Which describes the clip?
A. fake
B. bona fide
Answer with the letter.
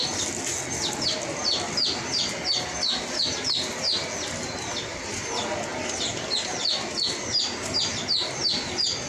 B